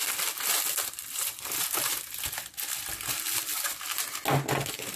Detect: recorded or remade recorded